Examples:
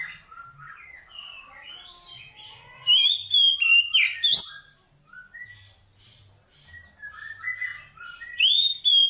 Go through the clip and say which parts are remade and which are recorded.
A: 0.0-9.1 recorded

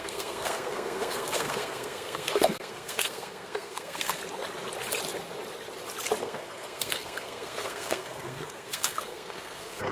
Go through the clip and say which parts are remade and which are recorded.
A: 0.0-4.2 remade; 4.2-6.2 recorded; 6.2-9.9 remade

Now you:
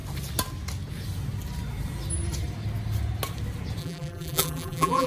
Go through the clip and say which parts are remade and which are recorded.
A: 0.0-3.8 recorded; 3.8-5.1 remade